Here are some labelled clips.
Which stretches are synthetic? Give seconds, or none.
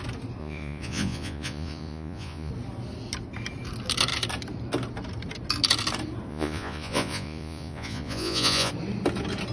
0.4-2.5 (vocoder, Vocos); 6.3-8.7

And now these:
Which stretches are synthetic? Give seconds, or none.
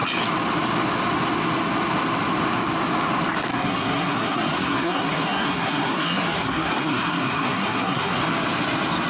3.5-8.2 (codec, SNAC)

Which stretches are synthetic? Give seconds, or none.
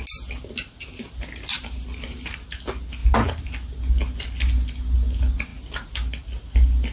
none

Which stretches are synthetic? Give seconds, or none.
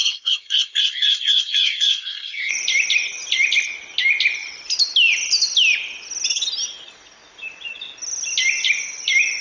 0.0-2.5 (codec, SNAC)